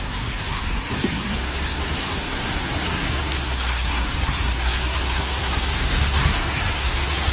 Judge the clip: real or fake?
fake